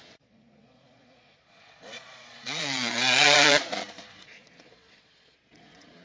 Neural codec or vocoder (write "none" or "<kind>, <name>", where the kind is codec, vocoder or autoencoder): vocoder, Vocos